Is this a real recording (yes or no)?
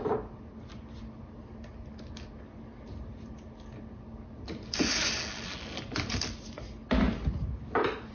yes